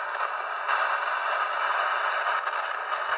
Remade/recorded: recorded